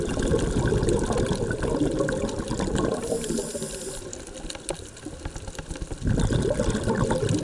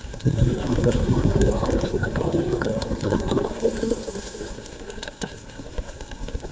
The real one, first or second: first